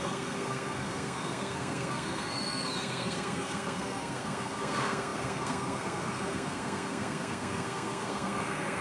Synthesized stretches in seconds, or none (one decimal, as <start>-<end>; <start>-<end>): 0.0-8.8